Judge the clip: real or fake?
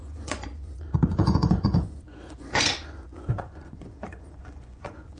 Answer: fake